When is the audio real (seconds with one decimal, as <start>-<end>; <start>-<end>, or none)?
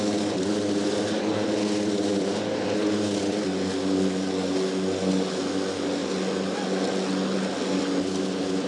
0.0-8.7